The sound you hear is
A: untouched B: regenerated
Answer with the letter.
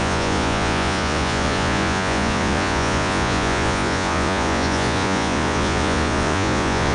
B